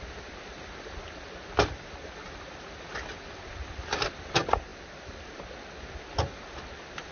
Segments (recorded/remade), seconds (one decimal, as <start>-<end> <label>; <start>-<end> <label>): 0.0-7.1 recorded